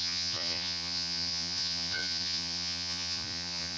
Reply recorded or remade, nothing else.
remade